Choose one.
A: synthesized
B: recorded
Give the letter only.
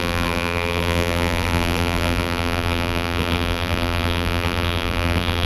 A